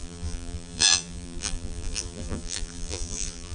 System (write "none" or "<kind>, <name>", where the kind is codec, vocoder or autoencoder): vocoder, BigVGAN v2